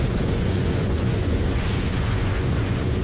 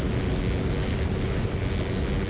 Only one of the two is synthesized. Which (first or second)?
first